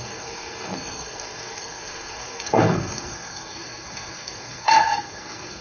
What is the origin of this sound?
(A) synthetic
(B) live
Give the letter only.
A